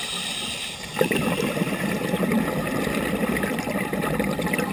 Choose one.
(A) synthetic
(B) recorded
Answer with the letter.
B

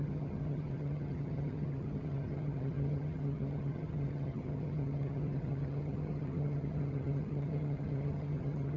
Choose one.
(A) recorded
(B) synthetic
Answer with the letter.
B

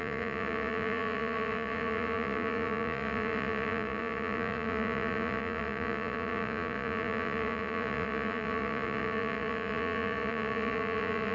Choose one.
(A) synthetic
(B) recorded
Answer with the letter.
A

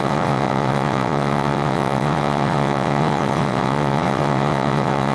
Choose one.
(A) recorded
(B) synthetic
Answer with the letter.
B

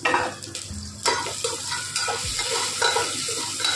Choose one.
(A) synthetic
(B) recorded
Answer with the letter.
B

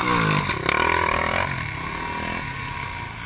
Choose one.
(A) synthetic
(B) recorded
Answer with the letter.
B